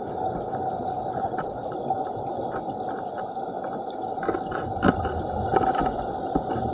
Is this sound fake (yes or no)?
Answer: no